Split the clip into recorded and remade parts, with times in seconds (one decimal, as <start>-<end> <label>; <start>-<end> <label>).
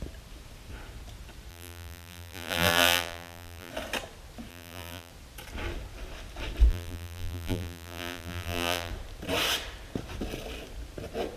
0.0-1.5 recorded; 1.5-3.7 remade; 3.7-4.5 recorded; 4.5-5.1 remade; 5.1-6.7 recorded; 6.7-8.9 remade; 8.9-11.4 recorded